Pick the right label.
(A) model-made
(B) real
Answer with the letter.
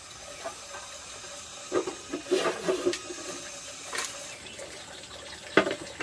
B